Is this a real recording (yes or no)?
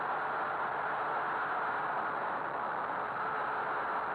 yes